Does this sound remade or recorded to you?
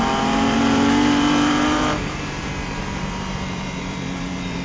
remade